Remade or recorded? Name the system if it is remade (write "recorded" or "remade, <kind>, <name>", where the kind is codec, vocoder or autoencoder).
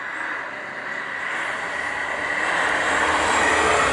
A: recorded